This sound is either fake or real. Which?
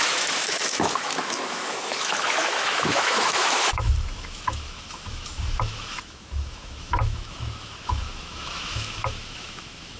fake